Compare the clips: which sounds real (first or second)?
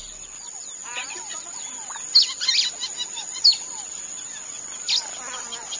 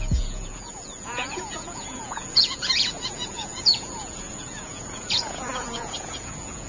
first